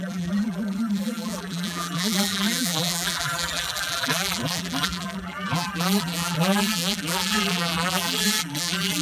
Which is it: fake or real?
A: fake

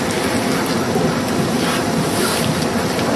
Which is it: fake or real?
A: real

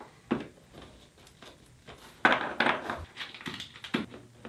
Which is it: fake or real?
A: real